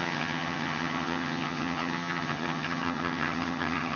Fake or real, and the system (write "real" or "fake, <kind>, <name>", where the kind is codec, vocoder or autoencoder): fake, vocoder, HiFi-GAN